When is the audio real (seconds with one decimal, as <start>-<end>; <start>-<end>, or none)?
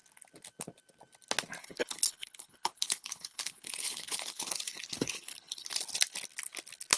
0.0-1.6; 5.8-7.0